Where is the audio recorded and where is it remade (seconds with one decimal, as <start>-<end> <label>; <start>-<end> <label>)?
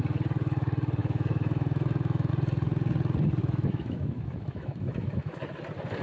0.0-1.0 recorded; 1.0-2.3 remade; 2.3-3.4 recorded; 3.4-5.4 remade; 5.4-6.0 recorded